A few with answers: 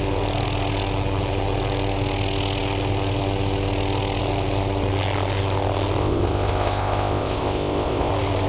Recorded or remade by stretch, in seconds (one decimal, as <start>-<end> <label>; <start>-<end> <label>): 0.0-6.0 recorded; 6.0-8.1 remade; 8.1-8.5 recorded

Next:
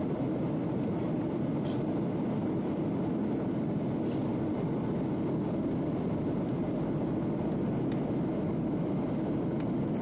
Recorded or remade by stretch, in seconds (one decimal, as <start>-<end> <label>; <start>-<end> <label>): 0.0-10.0 recorded

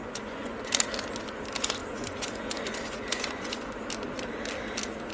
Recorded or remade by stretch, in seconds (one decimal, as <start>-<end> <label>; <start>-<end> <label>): 0.0-0.7 remade; 0.7-1.8 recorded; 1.8-3.8 remade; 3.8-5.1 recorded